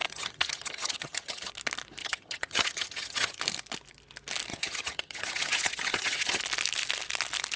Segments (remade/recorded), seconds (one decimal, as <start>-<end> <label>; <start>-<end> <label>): 0.0-1.5 remade; 1.5-2.0 recorded; 2.0-3.4 remade; 3.4-4.5 recorded; 4.5-6.4 remade; 6.4-7.6 recorded